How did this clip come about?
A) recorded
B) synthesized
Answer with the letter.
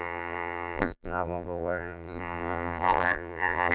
B